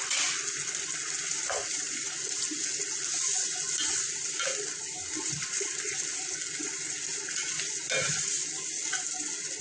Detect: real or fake real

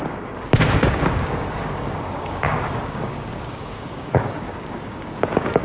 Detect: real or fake fake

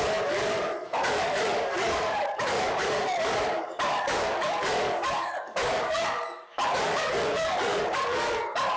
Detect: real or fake fake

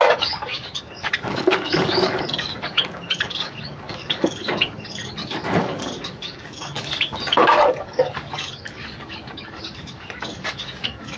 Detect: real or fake fake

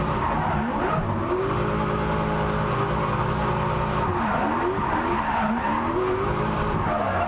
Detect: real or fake real